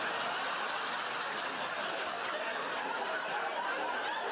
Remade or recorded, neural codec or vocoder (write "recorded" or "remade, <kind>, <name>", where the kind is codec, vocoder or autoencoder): recorded